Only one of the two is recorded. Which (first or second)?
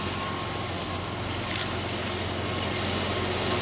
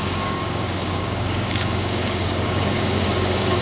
first